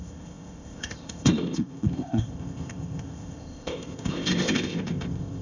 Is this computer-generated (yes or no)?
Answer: yes